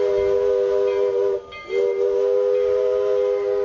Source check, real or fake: real